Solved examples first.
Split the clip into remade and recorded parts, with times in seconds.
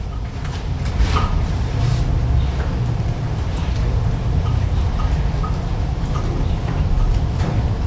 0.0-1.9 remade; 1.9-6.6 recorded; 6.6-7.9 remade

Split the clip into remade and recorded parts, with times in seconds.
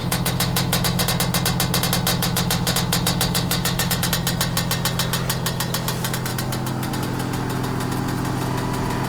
0.0-1.0 remade; 1.0-2.1 recorded; 2.1-4.1 remade; 4.1-9.1 recorded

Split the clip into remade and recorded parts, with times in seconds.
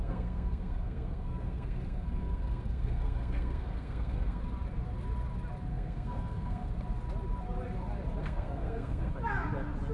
0.0-4.4 remade; 4.4-5.7 recorded; 5.7-6.7 remade; 6.7-8.2 recorded; 8.2-9.1 remade; 9.1-9.9 recorded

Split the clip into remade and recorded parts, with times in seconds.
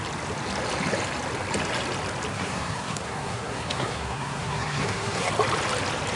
0.0-2.3 recorded; 2.3-5.3 remade; 5.3-6.2 recorded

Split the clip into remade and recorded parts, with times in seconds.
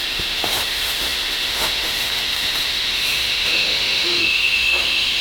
0.0-5.2 remade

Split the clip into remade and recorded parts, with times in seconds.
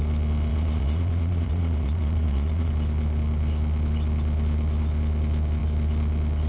0.0-0.5 recorded; 0.5-2.7 remade; 2.7-6.5 recorded